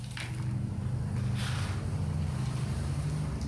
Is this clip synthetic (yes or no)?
no